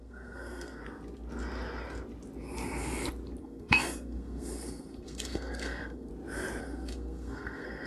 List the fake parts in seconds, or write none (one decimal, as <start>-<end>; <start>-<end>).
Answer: 0.0-0.8; 3.4-6.1; 6.6-7.9